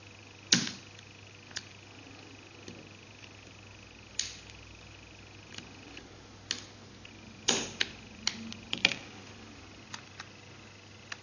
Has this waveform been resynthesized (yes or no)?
no